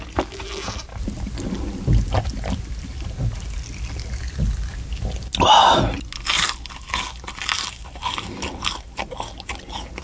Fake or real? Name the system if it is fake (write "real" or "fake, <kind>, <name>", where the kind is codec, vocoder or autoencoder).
real